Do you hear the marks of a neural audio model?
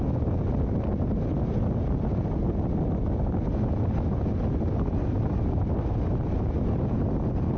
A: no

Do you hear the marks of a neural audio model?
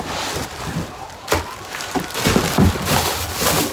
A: no